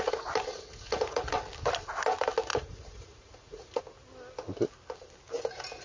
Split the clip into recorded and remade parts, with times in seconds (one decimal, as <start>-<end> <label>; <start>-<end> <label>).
0.0-0.5 recorded; 0.5-1.4 remade; 1.4-2.5 recorded; 2.5-3.8 remade; 3.8-5.8 recorded